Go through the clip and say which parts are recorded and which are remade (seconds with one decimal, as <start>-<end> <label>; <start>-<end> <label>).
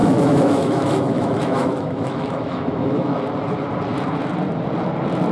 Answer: 0.0-3.2 remade; 3.2-5.3 recorded